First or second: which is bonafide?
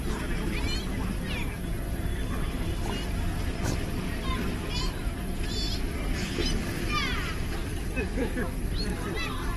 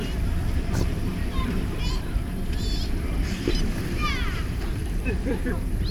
first